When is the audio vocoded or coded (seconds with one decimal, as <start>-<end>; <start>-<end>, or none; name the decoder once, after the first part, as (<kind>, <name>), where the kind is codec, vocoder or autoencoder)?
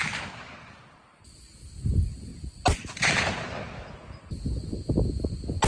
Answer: none